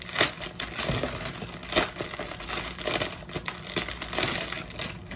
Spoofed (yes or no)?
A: no